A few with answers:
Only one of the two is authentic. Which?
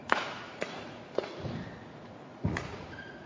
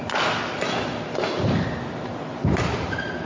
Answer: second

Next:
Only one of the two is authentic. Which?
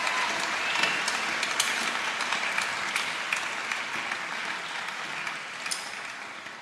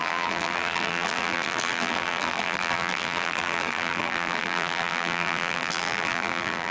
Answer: first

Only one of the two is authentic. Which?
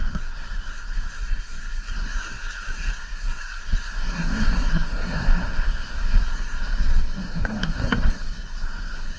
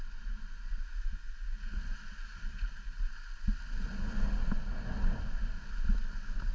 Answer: second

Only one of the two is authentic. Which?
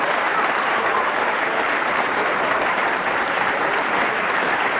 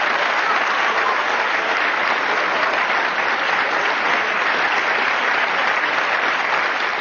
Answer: second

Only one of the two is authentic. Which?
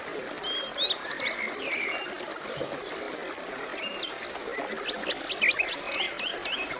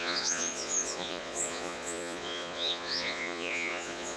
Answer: first